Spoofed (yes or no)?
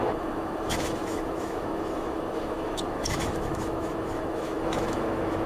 yes